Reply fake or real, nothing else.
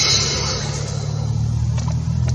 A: real